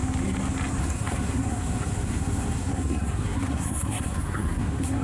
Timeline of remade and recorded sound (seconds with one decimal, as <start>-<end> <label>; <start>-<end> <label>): 0.0-0.8 recorded; 0.8-5.0 remade